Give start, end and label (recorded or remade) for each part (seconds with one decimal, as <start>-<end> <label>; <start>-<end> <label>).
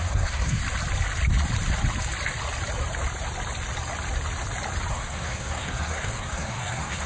0.0-0.6 remade; 0.6-4.9 recorded; 4.9-7.1 remade